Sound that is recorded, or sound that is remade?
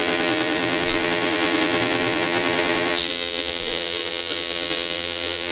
remade